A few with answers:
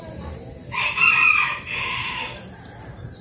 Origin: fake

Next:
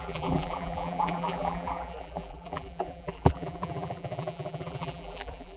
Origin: fake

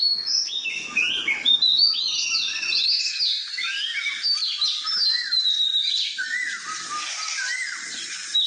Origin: real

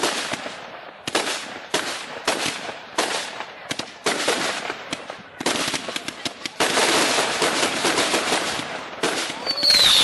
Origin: fake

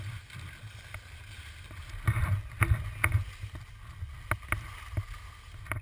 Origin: real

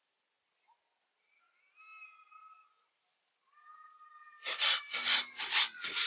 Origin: real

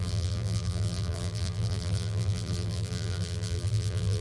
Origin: fake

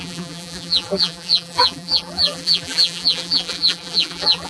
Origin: fake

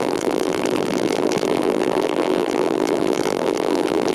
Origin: fake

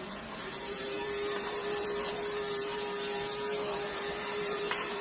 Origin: fake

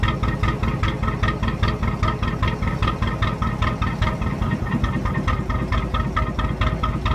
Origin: real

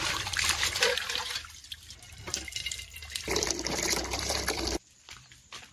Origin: fake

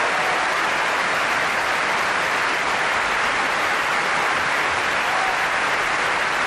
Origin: real